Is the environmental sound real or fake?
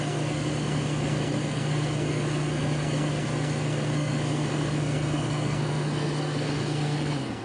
fake